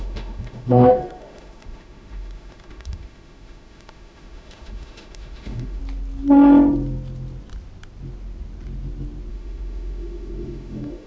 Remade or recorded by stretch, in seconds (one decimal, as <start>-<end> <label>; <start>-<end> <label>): 0.0-5.8 remade; 5.8-9.3 recorded; 9.3-11.1 remade

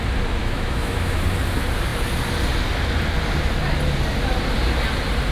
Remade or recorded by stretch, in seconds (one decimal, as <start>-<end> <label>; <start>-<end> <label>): 0.0-0.4 recorded; 0.4-1.2 remade; 1.2-5.3 recorded